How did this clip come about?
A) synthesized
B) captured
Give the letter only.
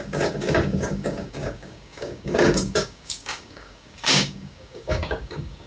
A